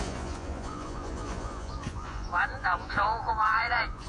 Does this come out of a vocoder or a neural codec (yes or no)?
yes